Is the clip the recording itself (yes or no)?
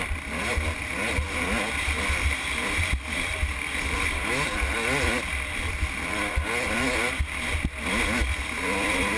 yes